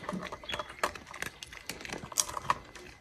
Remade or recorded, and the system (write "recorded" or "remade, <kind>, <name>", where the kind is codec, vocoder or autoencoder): recorded